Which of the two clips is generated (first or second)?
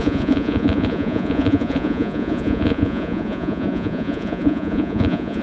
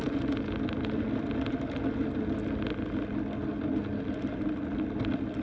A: first